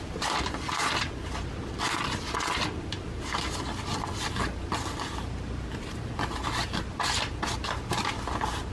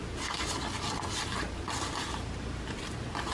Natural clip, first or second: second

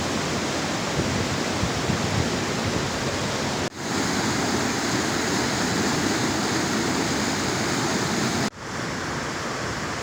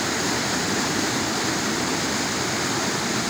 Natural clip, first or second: first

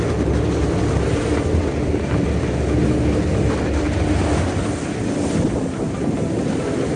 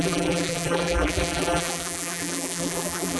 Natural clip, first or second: first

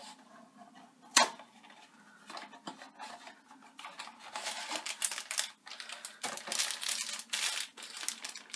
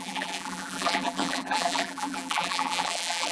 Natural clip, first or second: first